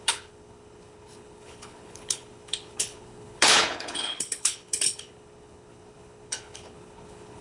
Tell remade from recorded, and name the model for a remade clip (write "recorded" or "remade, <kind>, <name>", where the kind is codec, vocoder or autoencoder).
remade, codec, HILCodec